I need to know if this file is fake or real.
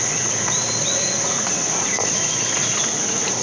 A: fake